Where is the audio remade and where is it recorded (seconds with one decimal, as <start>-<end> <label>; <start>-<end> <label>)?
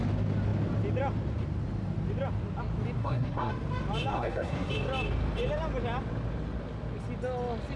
0.0-3.0 recorded; 3.0-3.5 remade; 3.5-4.1 recorded; 4.1-4.7 remade; 4.7-7.8 recorded